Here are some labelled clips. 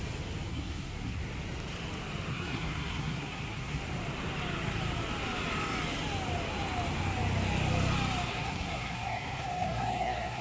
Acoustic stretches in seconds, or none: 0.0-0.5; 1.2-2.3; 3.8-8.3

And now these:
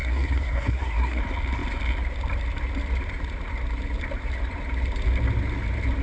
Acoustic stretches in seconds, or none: 1.2-6.0

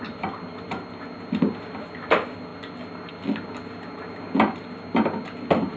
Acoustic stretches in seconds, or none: 0.0-5.8